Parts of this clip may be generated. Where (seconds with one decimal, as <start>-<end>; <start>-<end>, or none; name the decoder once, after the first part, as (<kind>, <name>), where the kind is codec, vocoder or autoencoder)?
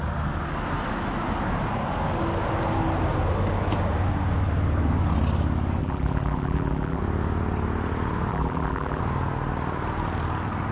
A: 5.8-7.0 (vocoder, BigVGAN v2); 8.3-9.0